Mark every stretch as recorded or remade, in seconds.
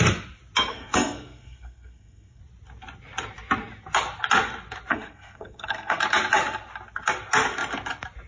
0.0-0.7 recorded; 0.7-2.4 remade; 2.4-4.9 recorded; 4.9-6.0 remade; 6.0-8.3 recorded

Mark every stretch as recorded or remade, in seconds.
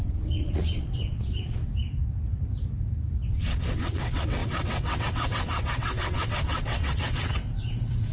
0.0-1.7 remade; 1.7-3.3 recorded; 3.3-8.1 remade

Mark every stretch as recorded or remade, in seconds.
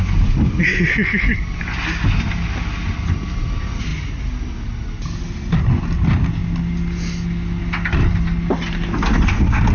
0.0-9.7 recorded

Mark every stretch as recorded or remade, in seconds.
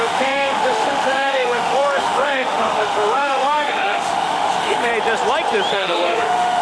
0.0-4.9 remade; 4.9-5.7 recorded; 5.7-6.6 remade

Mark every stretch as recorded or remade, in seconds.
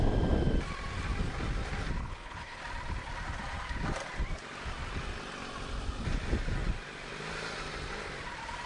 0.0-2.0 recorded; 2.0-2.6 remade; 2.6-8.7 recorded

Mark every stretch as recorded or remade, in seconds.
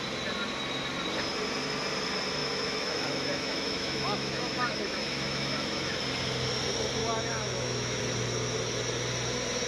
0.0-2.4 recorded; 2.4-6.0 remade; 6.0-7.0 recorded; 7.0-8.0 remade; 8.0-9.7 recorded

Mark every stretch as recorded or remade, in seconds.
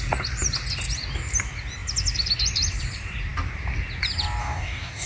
0.0-4.4 recorded; 4.4-5.1 remade